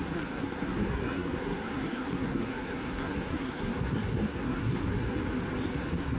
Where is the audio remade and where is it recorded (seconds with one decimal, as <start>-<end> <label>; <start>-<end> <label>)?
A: 0.0-5.2 remade; 5.2-5.7 recorded; 5.7-6.2 remade